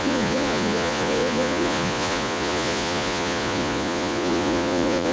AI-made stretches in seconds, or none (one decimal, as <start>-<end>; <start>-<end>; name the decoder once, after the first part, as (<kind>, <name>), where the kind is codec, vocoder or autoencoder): 0.0-5.1 (vocoder, Vocos)